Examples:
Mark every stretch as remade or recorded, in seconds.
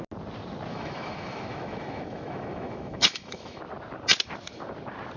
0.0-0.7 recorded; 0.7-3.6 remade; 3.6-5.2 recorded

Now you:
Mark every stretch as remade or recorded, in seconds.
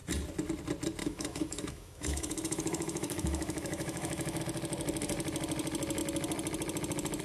0.0-1.0 recorded; 1.0-4.4 remade; 4.4-7.2 recorded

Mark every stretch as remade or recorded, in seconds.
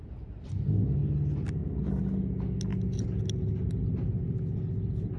0.0-5.2 recorded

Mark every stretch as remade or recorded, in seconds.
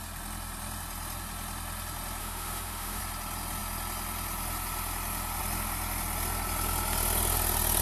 0.0-2.2 recorded; 2.2-3.0 remade; 3.0-7.8 recorded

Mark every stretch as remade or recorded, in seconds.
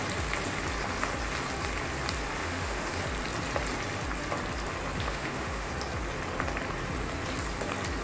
0.0-2.4 recorded; 2.4-3.0 remade; 3.0-5.0 recorded; 5.0-5.7 remade; 5.7-8.0 recorded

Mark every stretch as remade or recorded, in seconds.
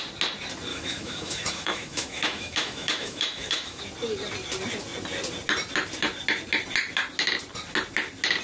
0.0-0.7 recorded; 0.7-3.8 remade; 3.8-8.4 recorded